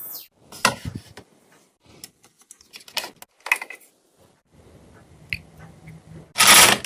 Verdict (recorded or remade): recorded